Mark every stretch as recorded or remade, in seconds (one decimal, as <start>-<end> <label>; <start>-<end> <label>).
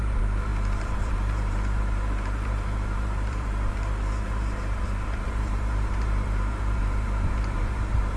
0.0-8.2 remade